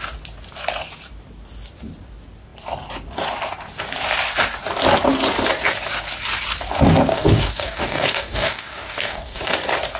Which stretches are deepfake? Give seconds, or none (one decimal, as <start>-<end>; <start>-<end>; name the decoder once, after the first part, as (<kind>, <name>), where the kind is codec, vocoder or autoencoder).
7.1-9.4 (codec, DAC)